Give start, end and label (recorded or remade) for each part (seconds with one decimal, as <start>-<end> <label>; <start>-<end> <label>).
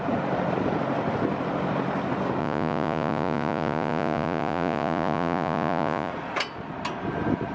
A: 0.0-2.4 recorded; 2.4-6.1 remade; 6.1-7.5 recorded